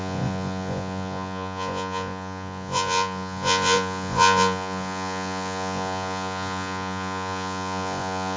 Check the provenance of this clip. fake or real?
fake